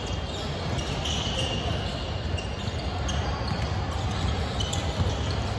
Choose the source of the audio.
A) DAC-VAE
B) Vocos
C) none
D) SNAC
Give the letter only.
C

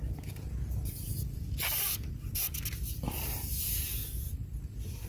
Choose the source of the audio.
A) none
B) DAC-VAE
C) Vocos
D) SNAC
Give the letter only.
A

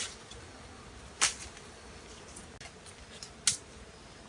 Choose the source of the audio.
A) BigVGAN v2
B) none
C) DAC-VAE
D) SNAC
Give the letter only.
B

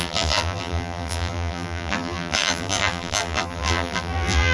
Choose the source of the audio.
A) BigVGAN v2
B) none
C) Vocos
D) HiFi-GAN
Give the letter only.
A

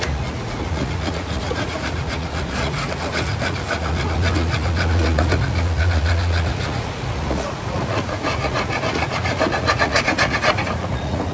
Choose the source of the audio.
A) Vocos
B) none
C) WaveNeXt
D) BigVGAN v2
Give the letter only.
A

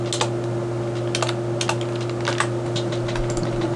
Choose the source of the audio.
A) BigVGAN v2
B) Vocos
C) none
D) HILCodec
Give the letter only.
C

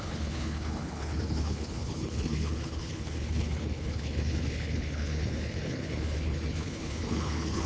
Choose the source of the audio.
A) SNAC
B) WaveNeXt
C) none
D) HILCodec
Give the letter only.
D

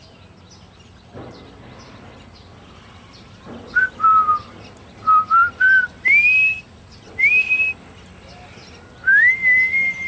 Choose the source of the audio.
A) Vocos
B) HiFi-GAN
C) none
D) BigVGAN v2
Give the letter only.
C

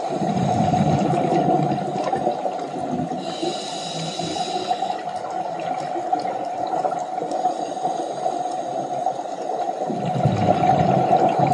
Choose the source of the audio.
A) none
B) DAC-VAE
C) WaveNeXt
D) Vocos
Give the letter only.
A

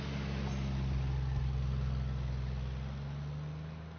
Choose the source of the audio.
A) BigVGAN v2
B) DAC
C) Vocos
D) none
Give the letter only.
D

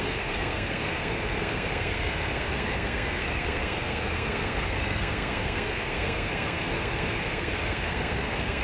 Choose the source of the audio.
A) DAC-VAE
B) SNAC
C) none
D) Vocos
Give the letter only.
B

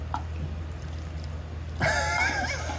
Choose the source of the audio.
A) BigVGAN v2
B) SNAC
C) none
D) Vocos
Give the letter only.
C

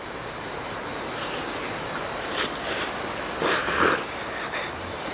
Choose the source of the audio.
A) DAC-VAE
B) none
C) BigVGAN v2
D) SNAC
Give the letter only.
C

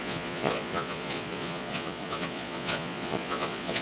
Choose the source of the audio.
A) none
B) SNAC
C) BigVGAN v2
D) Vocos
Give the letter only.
D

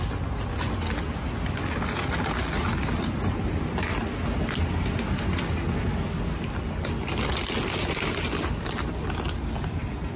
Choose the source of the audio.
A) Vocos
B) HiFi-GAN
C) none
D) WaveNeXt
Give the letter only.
C